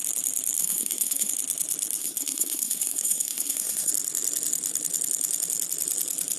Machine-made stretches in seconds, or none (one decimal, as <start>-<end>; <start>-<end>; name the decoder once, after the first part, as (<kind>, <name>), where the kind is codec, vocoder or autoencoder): 0.6-1.3 (codec, SNAC); 2.0-3.9